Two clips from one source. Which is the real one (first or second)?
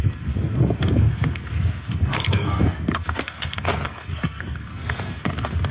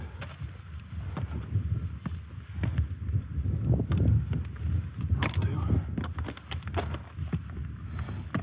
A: second